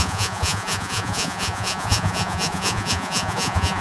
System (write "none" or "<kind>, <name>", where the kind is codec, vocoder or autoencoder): vocoder, Vocos